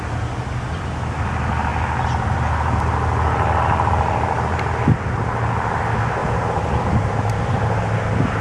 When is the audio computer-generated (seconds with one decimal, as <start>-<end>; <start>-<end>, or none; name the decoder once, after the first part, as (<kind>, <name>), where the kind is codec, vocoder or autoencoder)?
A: 6.2-7.8 (vocoder, BigVGAN v2)